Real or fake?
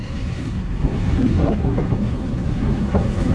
fake